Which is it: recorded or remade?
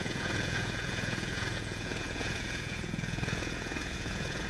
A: remade